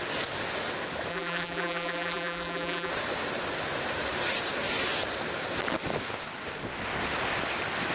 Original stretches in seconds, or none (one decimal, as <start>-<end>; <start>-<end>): 0.0-1.1; 2.9-7.9